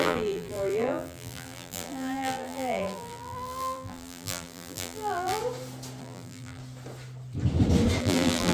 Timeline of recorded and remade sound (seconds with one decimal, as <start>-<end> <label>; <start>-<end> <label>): 0.0-5.4 remade; 5.4-6.0 recorded; 6.0-6.6 remade; 6.6-8.0 recorded; 8.0-8.5 remade